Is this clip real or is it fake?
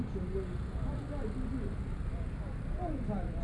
real